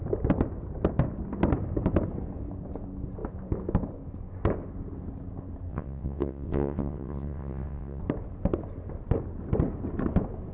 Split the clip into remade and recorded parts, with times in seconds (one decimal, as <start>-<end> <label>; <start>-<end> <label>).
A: 0.0-5.7 recorded; 5.7-8.0 remade; 8.0-10.5 recorded